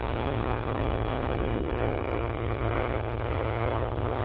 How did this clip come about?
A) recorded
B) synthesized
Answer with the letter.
B